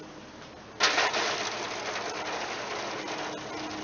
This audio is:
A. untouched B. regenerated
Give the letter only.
A